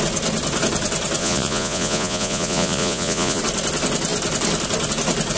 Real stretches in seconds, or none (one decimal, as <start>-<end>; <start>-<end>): 0.0-1.2; 3.4-5.4

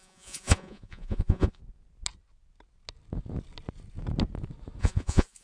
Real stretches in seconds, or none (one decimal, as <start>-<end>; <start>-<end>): 1.6-4.8